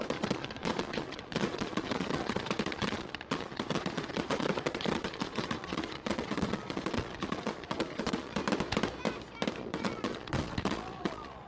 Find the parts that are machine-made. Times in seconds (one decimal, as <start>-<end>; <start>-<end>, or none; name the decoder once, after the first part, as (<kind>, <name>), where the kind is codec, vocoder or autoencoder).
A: 0.0-8.4 (vocoder, Vocos); 9.6-11.5